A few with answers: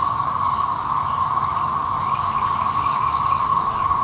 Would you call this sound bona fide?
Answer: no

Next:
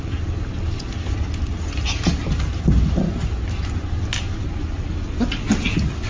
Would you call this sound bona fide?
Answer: yes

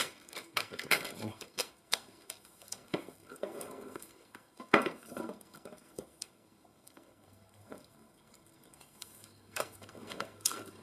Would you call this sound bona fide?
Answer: no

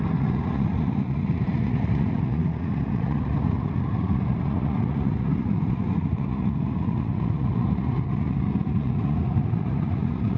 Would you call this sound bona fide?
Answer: no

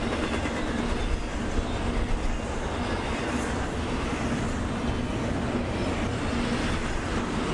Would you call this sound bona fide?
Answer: yes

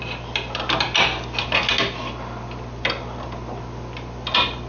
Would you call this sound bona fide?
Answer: yes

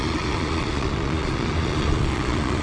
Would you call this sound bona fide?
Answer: no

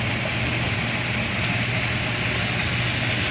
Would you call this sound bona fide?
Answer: yes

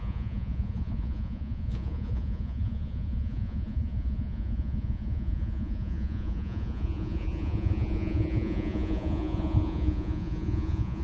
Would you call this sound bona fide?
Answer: no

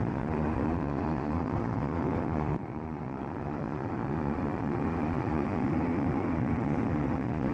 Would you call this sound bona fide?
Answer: no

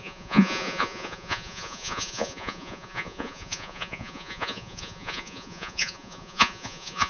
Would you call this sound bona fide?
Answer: no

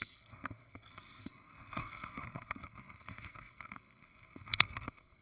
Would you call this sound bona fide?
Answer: no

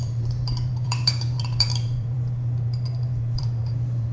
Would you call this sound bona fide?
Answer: no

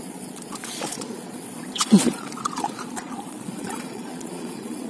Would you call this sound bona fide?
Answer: no